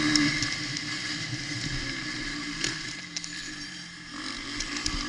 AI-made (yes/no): no